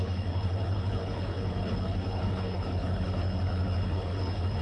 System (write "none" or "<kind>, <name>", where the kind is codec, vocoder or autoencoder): codec, HILCodec